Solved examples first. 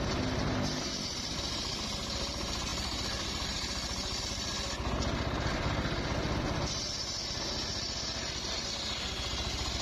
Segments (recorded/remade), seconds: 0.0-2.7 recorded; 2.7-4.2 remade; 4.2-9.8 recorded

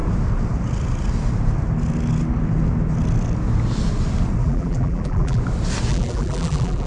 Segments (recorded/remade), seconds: 0.0-4.4 recorded; 4.4-5.4 remade; 5.4-5.9 recorded; 5.9-6.9 remade

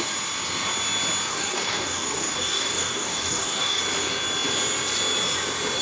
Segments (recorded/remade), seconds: 0.0-1.3 recorded; 1.3-3.8 remade; 3.8-5.8 recorded

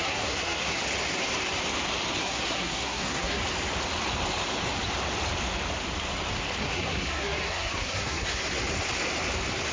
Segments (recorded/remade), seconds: 0.0-0.8 remade; 0.8-2.2 recorded; 2.2-3.4 remade; 3.4-6.6 recorded; 6.6-8.4 remade; 8.4-9.7 recorded

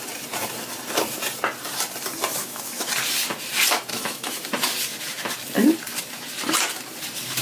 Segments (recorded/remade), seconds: 0.0-2.3 recorded; 2.3-2.9 remade; 2.9-3.9 recorded; 3.9-4.5 remade; 4.5-7.4 recorded

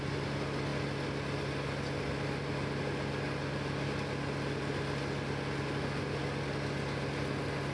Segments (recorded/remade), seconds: 0.0-7.7 recorded